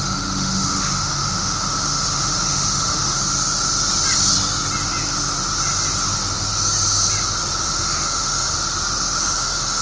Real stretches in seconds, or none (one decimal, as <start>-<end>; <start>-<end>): 3.2-7.6; 8.5-9.2